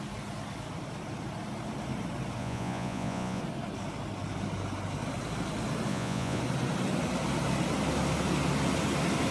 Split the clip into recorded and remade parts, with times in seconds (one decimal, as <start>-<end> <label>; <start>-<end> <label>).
0.0-2.4 recorded; 2.4-3.4 remade; 3.4-5.9 recorded; 5.9-6.4 remade; 6.4-9.3 recorded